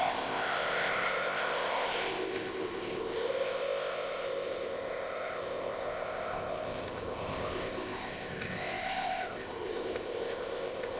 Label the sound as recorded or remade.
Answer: remade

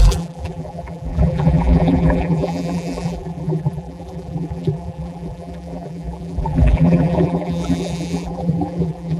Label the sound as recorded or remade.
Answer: remade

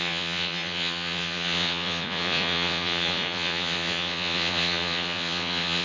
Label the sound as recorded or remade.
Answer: remade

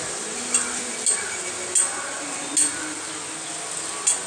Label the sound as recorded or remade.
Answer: recorded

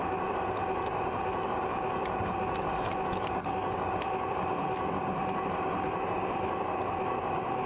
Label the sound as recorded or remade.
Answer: recorded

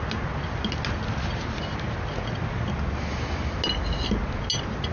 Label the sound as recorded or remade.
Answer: recorded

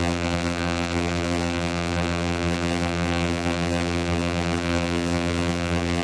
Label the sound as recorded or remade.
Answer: remade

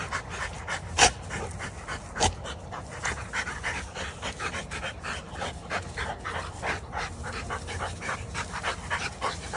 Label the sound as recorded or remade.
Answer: recorded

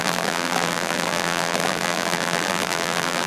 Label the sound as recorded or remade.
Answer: remade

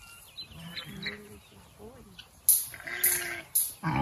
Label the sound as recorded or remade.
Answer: recorded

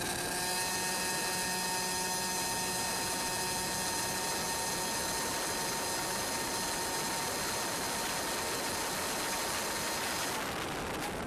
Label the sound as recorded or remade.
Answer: recorded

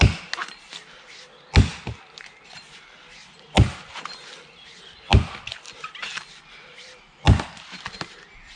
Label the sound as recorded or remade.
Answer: recorded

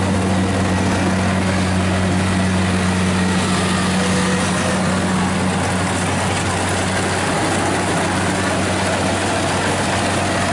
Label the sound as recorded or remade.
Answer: recorded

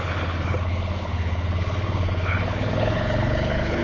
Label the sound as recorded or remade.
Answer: remade